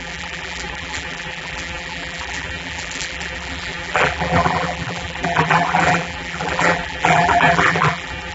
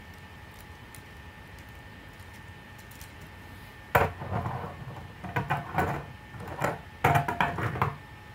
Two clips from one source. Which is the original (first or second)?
second